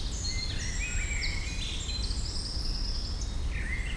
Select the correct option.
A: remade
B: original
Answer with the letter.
B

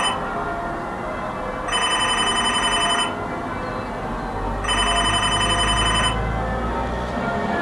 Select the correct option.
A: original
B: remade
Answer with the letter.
A